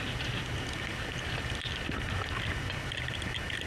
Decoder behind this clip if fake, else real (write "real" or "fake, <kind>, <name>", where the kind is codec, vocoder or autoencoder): real